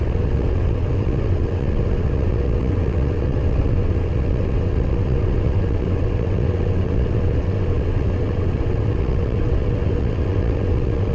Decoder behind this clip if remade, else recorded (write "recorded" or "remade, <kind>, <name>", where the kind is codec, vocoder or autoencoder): remade, vocoder, WaveNeXt